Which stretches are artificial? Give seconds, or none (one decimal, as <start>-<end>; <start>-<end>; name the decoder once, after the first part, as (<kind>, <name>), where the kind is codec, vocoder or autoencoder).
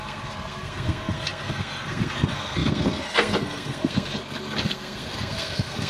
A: 0.0-5.9 (codec, SNAC)